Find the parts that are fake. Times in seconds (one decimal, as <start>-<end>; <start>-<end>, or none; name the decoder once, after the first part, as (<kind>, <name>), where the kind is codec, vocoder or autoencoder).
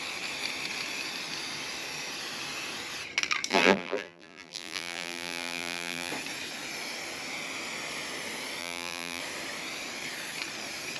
3.5-6.1 (vocoder, BigVGAN v2); 8.6-9.2